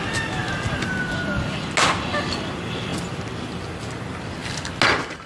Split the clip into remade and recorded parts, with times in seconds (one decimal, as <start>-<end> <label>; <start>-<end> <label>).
0.0-5.3 recorded

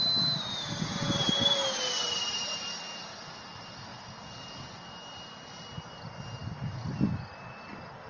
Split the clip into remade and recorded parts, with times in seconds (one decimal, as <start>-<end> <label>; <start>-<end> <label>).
0.0-8.1 recorded

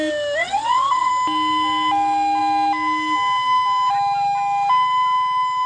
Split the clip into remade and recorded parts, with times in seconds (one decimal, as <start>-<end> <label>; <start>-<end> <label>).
0.0-0.4 recorded; 0.4-1.1 remade; 1.1-5.7 recorded